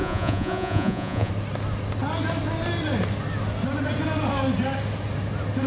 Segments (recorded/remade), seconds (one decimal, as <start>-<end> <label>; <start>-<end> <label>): 0.0-1.3 remade; 1.3-5.7 recorded